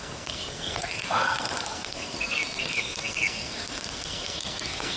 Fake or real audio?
fake